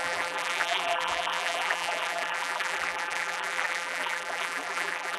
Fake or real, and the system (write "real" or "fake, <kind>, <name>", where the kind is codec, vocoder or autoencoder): fake, vocoder, BigVGAN v2